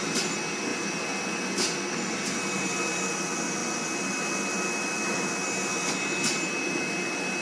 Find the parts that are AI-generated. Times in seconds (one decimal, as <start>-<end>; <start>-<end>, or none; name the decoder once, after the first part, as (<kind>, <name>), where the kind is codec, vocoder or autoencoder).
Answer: none

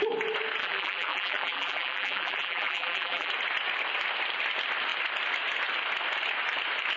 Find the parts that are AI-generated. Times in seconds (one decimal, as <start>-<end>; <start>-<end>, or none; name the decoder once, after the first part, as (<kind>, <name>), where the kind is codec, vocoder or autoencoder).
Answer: 0.6-3.3 (vocoder, BigVGAN v2)

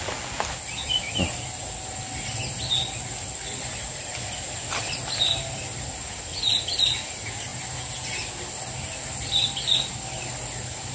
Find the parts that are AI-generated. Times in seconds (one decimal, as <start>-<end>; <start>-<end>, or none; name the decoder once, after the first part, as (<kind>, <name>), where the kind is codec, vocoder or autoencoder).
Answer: none